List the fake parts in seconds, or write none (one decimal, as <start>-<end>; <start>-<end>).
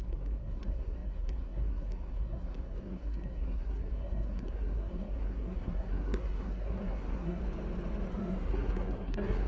0.0-7.4; 8.1-9.5